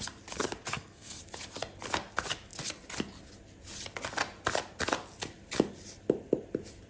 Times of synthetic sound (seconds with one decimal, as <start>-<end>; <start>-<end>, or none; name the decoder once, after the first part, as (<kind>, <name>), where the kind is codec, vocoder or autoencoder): 0.7-1.2 (codec, SNAC)